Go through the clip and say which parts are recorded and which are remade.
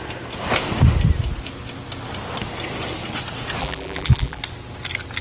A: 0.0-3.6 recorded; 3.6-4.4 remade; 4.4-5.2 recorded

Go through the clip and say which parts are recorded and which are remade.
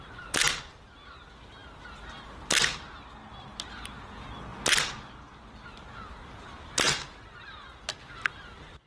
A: 0.0-8.9 recorded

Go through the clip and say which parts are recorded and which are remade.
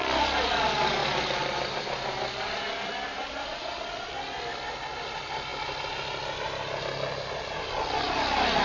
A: 0.0-8.6 recorded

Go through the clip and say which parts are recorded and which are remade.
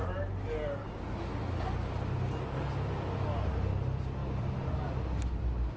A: 0.0-3.5 recorded; 3.5-5.8 remade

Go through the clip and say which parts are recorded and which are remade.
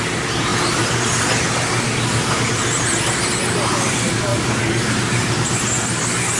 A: 0.0-4.3 recorded; 4.3-5.3 remade; 5.3-6.4 recorded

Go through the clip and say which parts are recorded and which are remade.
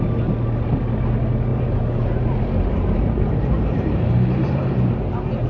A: 0.0-1.5 recorded; 1.5-4.0 remade; 4.0-5.5 recorded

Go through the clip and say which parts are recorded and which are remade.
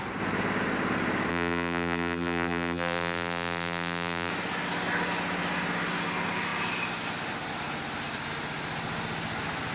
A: 0.0-1.3 recorded; 1.3-4.3 remade; 4.3-9.7 recorded